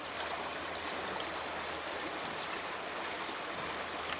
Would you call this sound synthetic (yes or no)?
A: no